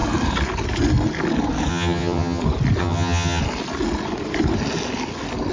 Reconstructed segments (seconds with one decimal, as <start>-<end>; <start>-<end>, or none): 1.7-2.4; 2.8-3.4